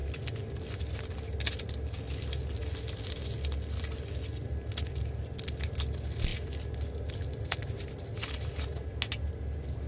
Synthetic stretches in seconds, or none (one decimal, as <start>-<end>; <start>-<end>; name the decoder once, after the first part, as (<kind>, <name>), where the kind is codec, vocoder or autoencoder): none